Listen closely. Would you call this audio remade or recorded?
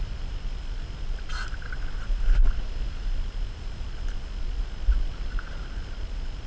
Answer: recorded